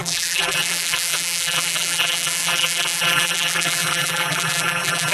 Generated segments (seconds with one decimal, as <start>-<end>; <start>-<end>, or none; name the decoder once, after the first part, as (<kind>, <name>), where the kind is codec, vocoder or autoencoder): 0.0-5.1 (vocoder, BigVGAN v2)